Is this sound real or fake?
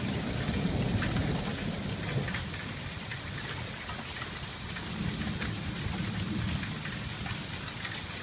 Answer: real